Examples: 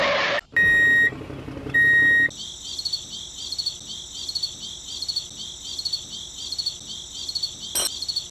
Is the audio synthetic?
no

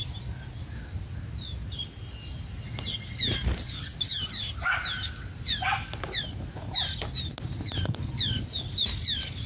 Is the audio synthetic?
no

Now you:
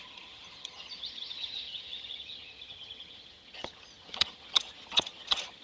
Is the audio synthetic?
yes